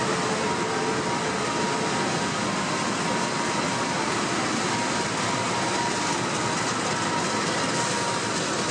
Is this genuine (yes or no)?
yes